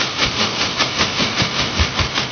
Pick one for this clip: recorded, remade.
recorded